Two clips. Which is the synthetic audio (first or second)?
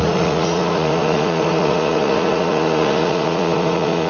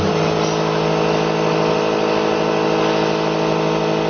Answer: first